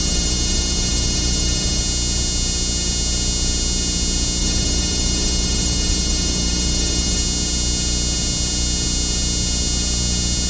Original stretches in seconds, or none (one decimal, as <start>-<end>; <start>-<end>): 1.8-4.4; 7.2-10.5